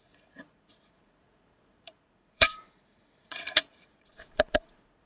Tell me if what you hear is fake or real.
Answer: fake